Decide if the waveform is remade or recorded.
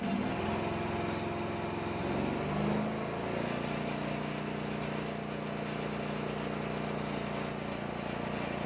recorded